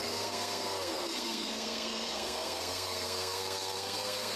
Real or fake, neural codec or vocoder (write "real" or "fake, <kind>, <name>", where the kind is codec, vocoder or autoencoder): fake, codec, SNAC